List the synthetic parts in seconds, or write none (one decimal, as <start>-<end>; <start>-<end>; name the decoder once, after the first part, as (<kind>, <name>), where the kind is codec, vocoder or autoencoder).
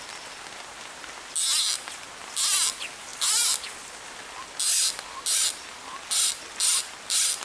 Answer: none